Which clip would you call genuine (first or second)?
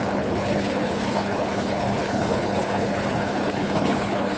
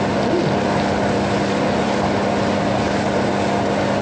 second